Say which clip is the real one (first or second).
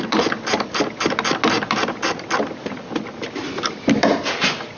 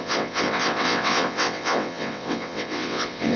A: first